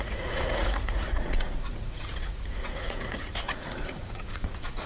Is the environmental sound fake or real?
fake